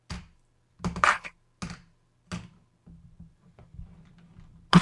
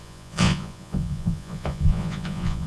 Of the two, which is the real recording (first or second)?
first